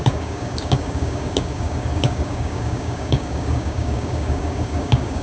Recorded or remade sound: remade